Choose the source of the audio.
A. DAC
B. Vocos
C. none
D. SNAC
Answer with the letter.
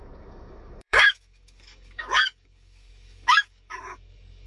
A